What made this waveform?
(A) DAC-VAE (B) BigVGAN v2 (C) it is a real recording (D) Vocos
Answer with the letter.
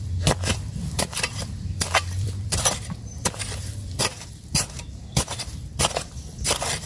B